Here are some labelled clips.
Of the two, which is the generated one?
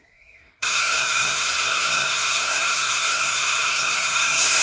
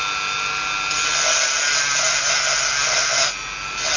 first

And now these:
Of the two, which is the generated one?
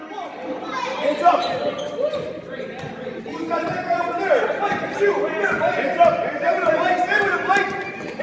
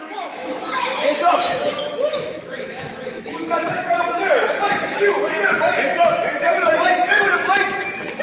second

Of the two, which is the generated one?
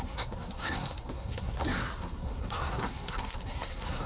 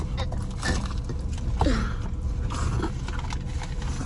first